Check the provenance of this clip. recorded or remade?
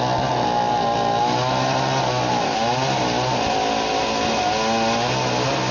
recorded